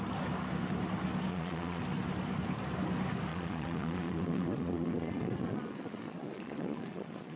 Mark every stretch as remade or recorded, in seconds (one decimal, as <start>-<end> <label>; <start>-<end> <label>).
0.0-1.3 recorded; 1.3-1.8 remade; 1.8-3.3 recorded; 3.3-7.4 remade